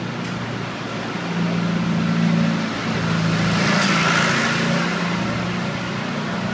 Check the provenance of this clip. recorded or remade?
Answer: recorded